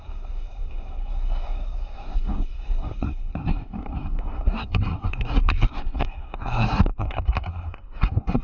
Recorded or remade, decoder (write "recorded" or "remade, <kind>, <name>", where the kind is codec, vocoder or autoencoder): remade, codec, SNAC